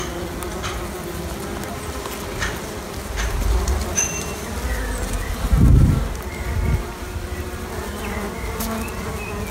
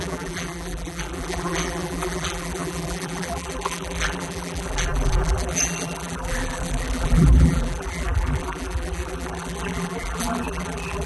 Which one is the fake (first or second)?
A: second